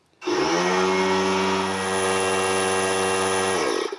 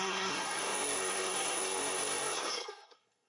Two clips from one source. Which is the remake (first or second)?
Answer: second